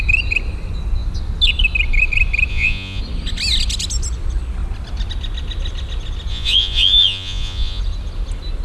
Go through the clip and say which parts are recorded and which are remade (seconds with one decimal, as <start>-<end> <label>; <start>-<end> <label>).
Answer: 0.0-2.5 recorded; 2.5-3.0 remade; 3.0-6.3 recorded; 6.3-7.8 remade; 7.8-8.6 recorded